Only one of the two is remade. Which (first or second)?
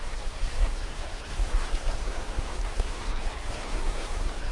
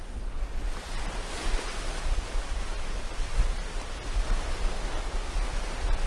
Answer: first